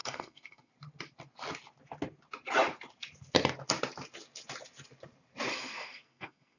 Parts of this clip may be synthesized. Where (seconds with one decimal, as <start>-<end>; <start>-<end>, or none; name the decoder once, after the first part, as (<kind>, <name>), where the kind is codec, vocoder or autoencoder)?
0.0-0.7 (codec, SNAC); 5.5-6.6